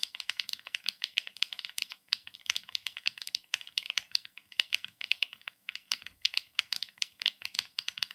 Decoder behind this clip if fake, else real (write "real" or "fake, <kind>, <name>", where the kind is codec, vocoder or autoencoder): fake, codec, SNAC